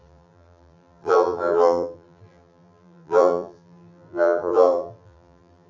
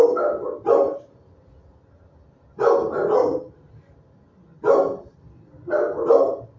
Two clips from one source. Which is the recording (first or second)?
second